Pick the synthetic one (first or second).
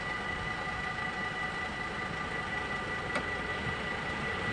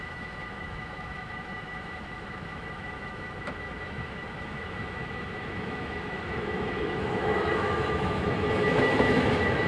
second